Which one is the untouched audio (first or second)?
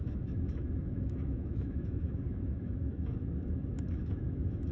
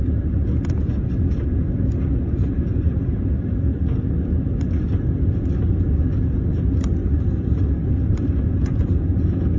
second